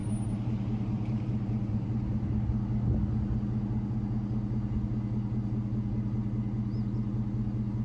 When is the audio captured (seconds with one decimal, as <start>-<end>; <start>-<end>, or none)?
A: 2.4-7.8